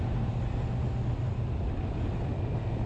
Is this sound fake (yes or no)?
no